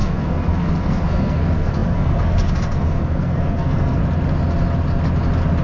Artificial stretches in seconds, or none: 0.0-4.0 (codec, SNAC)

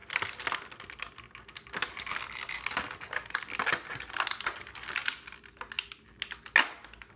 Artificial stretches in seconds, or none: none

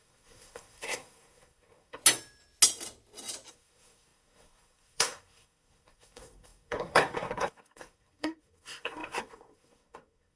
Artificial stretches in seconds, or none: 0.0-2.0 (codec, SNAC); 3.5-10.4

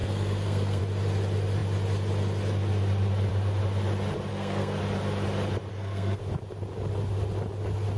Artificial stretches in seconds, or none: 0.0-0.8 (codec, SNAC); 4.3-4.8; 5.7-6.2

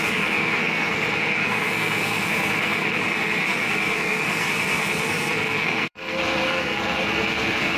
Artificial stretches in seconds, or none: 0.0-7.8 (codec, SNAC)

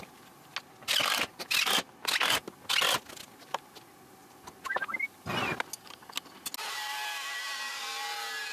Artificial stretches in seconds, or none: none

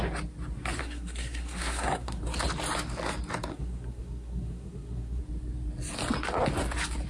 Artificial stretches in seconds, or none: 0.8-2.2 (codec, SNAC); 3.5-5.2

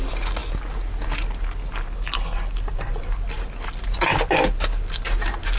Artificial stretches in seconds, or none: none